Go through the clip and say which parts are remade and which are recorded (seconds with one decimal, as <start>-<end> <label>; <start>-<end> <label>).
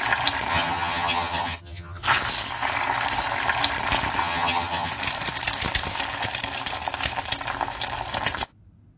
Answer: 0.0-0.5 recorded; 0.5-2.0 remade; 2.0-4.2 recorded; 4.2-4.9 remade; 4.9-9.0 recorded